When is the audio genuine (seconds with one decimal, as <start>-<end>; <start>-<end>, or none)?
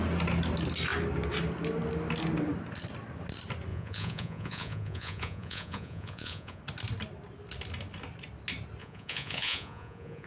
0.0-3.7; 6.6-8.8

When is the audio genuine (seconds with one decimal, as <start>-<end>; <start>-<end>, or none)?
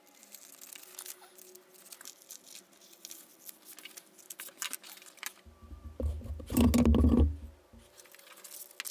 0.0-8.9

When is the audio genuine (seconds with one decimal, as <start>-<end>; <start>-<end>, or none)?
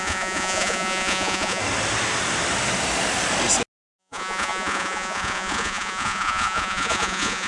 1.6-4.0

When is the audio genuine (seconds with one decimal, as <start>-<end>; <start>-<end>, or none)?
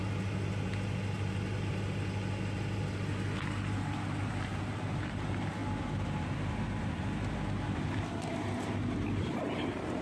0.0-10.0